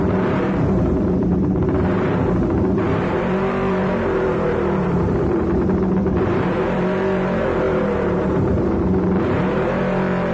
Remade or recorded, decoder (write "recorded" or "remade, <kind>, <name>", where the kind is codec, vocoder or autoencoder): remade, vocoder, BigVGAN v2